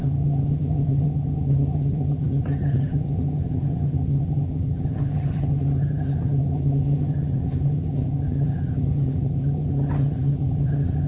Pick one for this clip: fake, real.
fake